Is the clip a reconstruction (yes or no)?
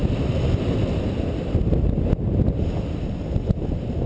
no